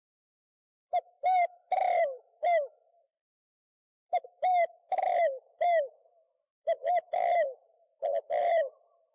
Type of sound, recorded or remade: remade